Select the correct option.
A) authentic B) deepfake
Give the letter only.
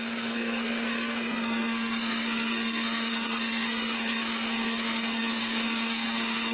B